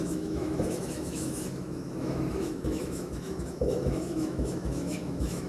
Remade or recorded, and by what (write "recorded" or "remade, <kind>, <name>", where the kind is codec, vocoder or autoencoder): remade, autoencoder, DAC-VAE